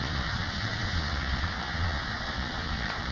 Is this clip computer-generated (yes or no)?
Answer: yes